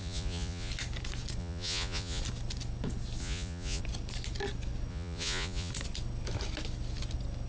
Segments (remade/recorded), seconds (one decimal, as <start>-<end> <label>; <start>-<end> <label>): 0.0-0.7 remade; 0.7-1.4 recorded; 1.4-2.2 remade; 2.2-3.2 recorded; 3.2-3.8 remade; 3.8-4.9 recorded; 4.9-5.7 remade; 5.7-7.5 recorded